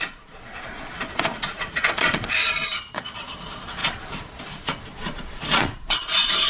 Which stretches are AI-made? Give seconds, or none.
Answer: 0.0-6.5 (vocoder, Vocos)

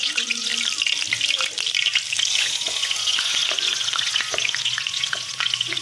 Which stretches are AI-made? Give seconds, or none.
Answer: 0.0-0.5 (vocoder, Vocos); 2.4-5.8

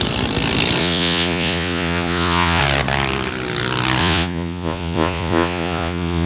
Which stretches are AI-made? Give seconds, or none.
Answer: 0.8-2.6 (vocoder, Vocos); 4.0-6.3

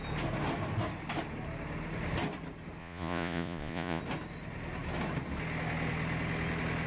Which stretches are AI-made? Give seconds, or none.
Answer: 2.8-4.0 (vocoder, Vocos)

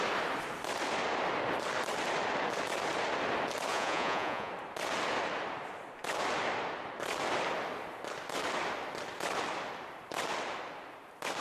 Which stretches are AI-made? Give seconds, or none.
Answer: 3.7-4.5 (vocoder, Vocos)

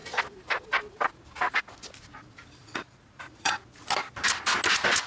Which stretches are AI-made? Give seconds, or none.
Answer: 2.6-3.5 (vocoder, Vocos)

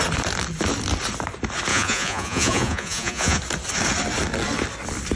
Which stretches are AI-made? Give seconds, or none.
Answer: 1.7-3.4 (vocoder, Vocos)